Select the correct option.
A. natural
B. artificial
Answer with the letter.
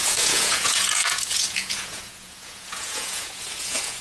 B